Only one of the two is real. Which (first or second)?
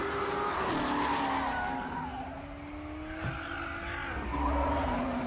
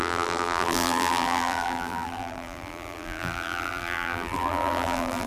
first